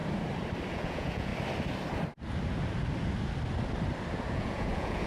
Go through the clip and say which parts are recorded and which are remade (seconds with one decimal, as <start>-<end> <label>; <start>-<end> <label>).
0.0-0.7 recorded; 0.7-1.3 remade; 1.3-4.3 recorded; 4.3-5.1 remade